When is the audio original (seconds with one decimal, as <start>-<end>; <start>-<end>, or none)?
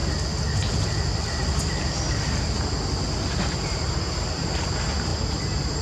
0.0-3.4